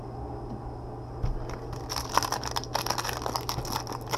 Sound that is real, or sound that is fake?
real